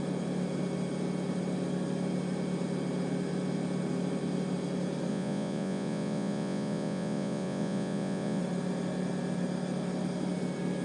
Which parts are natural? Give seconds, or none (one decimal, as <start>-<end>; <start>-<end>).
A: 0.0-5.1; 8.4-10.8